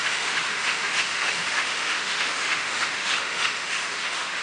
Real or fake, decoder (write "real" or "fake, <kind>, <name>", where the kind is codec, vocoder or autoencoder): fake, autoencoder, DAC-VAE